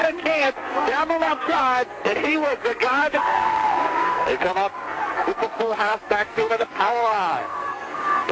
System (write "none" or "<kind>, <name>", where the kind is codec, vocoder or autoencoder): codec, SNAC